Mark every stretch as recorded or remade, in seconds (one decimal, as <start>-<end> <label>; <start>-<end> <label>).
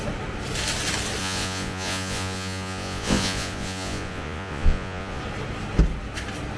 0.0-1.2 recorded; 1.2-5.2 remade; 5.2-6.6 recorded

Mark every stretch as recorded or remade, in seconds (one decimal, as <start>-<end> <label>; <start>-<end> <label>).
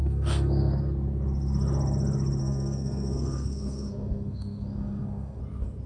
0.0-0.7 remade; 0.7-2.4 recorded; 2.4-5.4 remade; 5.4-5.9 recorded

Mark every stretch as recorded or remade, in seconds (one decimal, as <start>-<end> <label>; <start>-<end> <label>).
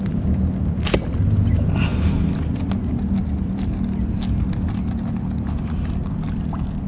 0.0-6.9 recorded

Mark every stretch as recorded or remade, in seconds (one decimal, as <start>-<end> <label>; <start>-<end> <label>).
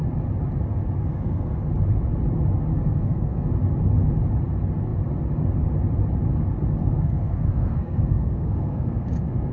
0.0-1.1 recorded; 1.1-1.7 remade; 1.7-2.7 recorded; 2.7-3.5 remade; 3.5-6.8 recorded; 6.8-9.5 remade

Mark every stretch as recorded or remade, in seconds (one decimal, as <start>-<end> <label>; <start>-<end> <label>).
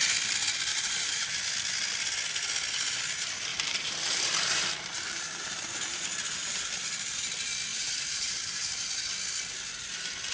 0.0-0.7 recorded; 0.7-1.5 remade; 1.5-3.5 recorded; 3.5-7.2 remade; 7.2-7.7 recorded; 7.7-8.9 remade; 8.9-10.3 recorded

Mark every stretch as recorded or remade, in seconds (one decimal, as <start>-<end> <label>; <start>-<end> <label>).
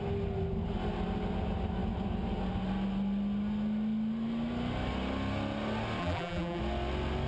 0.0-6.0 recorded; 6.0-6.6 remade; 6.6-7.3 recorded